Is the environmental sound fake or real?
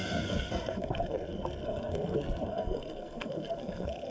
fake